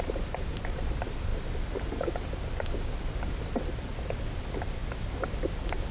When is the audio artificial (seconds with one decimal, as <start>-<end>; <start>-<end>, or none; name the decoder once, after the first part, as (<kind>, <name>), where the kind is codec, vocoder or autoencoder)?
none